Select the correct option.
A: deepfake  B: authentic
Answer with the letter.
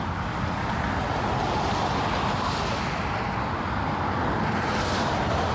B